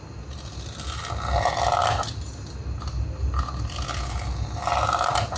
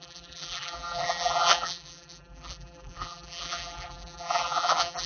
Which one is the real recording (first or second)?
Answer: first